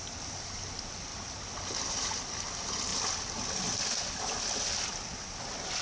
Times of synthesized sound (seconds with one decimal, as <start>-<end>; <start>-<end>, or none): none